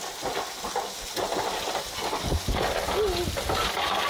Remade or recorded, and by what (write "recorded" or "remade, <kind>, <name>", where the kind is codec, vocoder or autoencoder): recorded